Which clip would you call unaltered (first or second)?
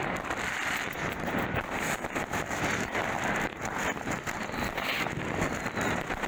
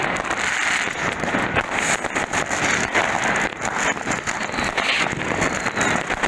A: second